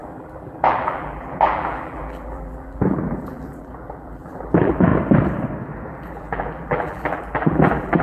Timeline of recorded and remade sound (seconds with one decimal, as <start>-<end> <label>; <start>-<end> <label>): 0.0-4.9 remade; 4.9-5.9 recorded; 5.9-8.0 remade